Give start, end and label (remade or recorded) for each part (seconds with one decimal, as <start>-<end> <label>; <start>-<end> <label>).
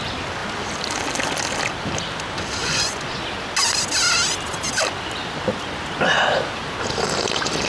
0.0-2.6 recorded; 2.6-3.1 remade; 3.1-7.7 recorded